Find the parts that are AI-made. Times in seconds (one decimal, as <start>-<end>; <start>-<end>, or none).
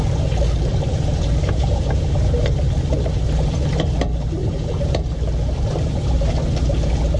0.7-3.7; 4.4-6.3